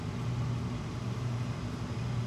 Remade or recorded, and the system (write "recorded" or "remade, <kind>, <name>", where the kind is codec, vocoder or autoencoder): recorded